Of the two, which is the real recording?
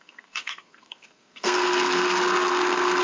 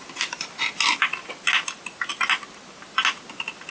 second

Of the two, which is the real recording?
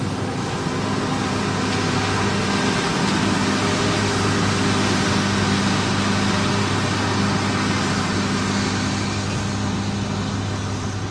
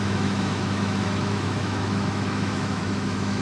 first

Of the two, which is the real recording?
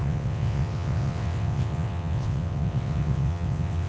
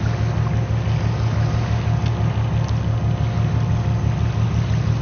second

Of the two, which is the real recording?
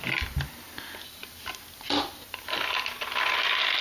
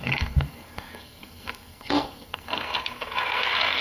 first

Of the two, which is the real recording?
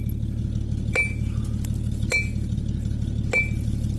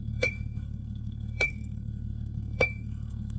first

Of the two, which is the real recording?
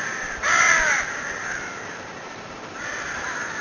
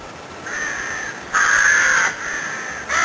second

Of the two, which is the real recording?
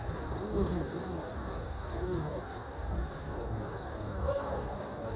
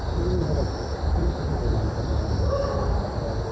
second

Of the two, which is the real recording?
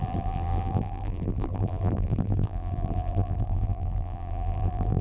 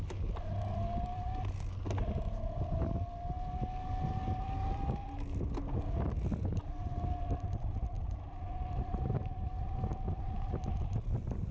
second